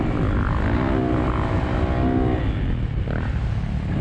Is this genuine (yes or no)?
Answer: yes